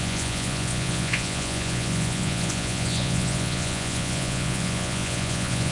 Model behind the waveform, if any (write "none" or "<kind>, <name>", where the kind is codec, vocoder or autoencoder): vocoder, Vocos